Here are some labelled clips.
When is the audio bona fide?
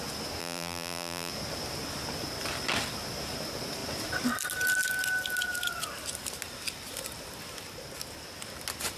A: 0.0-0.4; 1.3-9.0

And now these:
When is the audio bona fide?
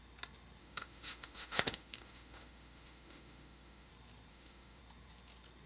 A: 0.0-0.6; 3.9-4.3; 4.8-5.7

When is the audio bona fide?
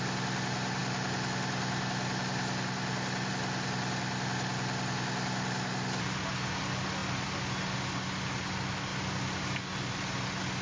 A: 0.0-10.6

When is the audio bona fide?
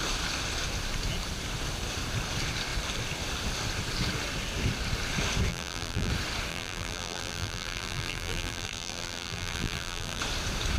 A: 0.0-5.5; 6.1-6.5; 10.2-10.8